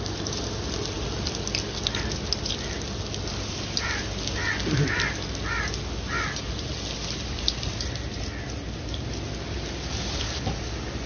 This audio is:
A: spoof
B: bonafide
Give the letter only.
B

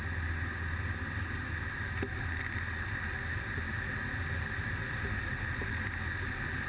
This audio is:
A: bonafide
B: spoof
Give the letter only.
A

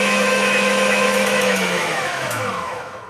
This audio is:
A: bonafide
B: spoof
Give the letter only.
B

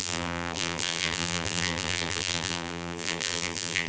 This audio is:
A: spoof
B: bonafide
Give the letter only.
A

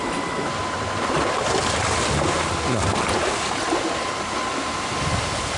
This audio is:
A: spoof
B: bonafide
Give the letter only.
B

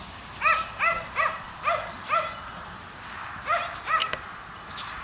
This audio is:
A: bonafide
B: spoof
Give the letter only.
A